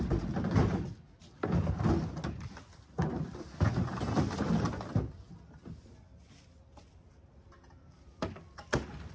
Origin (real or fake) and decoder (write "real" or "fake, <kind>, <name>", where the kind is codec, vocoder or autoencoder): real